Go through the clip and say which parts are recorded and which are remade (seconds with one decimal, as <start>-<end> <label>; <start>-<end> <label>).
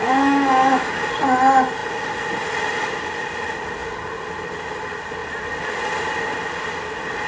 0.0-0.9 remade; 0.9-7.3 recorded